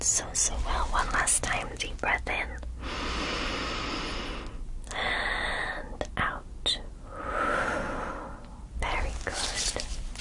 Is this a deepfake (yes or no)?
no